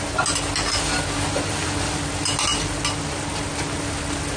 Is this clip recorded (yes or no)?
yes